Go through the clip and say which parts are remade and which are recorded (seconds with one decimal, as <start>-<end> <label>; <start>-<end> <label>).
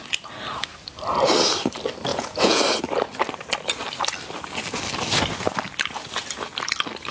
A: 0.0-2.1 recorded; 2.1-2.6 remade; 2.6-7.1 recorded